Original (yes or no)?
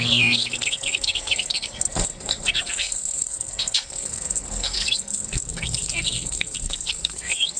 no